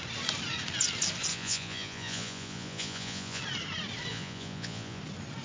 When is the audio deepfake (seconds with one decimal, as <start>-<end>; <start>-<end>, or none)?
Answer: 1.3-3.4; 4.1-5.0